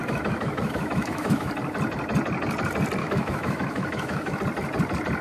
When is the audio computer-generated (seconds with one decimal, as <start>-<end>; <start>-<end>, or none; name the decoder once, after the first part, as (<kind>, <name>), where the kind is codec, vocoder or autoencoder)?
0.0-1.5 (autoencoder, DAC-VAE); 3.0-4.4